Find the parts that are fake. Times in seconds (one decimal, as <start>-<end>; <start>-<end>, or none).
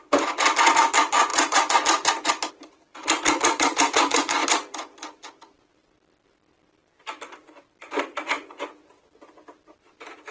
none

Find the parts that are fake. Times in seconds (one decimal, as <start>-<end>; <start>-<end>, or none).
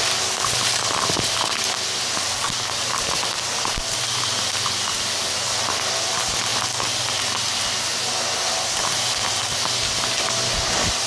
none